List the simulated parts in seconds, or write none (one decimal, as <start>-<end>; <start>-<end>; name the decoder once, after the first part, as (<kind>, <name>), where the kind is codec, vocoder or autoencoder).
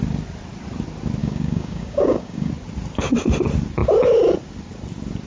1.2-2.5 (codec, DAC)